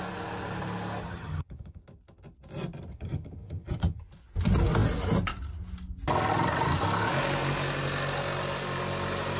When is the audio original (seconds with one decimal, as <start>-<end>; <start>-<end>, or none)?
0.0-1.0; 1.8-2.9; 4.0-9.4